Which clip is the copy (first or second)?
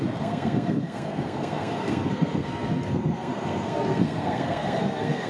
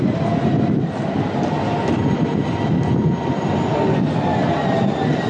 first